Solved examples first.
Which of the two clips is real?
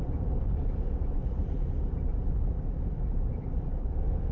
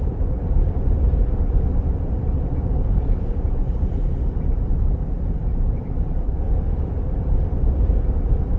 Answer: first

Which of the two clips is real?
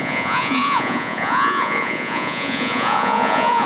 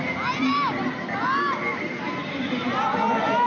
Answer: second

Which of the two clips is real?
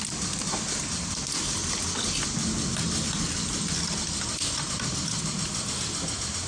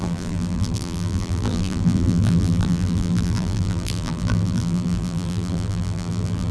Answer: first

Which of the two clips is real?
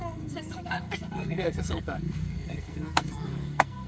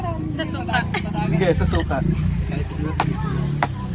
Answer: second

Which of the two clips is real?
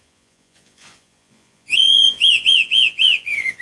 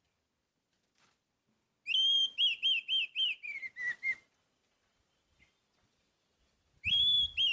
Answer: second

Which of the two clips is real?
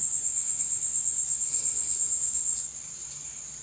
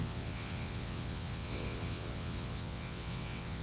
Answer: first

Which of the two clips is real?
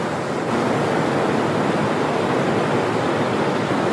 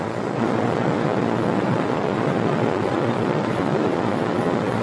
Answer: first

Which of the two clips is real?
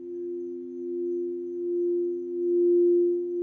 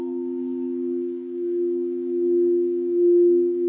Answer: first